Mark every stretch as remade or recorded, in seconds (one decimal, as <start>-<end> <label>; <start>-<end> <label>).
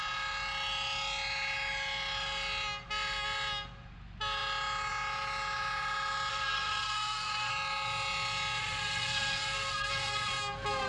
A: 0.0-6.3 recorded; 6.3-7.5 remade; 7.5-8.6 recorded; 8.6-10.3 remade; 10.3-10.9 recorded